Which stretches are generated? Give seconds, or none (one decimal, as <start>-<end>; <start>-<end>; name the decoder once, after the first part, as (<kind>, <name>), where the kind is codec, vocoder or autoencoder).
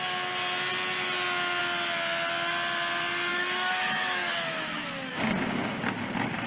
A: 3.3-5.1 (autoencoder, DAC-VAE)